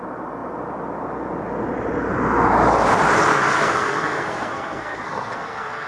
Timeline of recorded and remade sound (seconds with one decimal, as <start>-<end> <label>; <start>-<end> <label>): 0.0-3.3 recorded; 3.3-5.9 remade